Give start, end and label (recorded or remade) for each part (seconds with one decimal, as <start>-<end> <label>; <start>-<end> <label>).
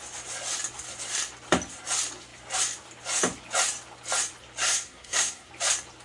0.0-4.6 recorded; 4.6-5.5 remade; 5.5-6.0 recorded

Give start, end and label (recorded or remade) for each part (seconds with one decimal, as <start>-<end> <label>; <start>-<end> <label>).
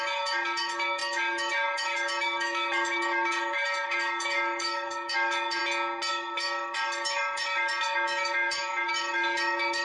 0.0-5.6 remade; 5.6-6.1 recorded; 6.1-9.8 remade